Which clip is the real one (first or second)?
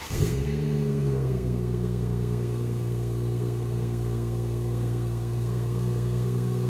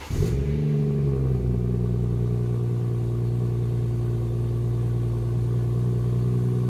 second